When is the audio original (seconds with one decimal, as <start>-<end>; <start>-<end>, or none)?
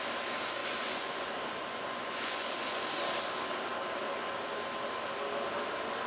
0.0-0.6; 3.0-6.1